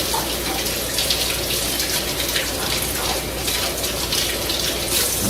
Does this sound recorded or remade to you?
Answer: recorded